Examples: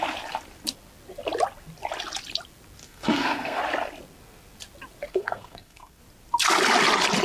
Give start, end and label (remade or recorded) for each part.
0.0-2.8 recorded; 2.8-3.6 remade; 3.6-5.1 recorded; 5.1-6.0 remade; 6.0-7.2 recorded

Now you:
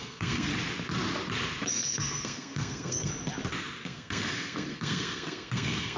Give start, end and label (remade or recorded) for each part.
0.0-0.5 remade; 0.5-1.7 recorded; 1.7-3.1 remade; 3.1-3.8 recorded; 3.8-6.0 remade